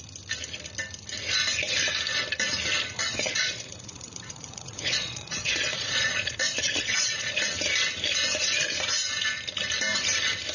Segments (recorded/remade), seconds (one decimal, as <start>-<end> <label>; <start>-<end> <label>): 0.0-3.0 recorded; 3.0-7.4 remade; 7.4-10.5 recorded